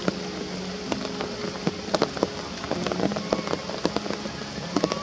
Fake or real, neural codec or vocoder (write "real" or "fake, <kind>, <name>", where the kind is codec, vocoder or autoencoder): real